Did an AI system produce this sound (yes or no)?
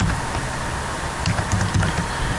no